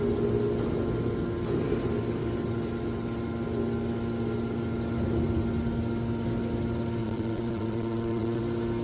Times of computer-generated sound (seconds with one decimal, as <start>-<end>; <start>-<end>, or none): 7.0-8.4